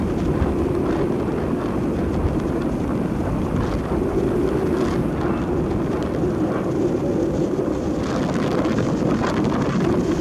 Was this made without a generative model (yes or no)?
yes